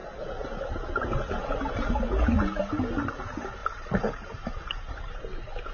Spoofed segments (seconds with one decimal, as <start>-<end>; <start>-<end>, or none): 3.6-5.2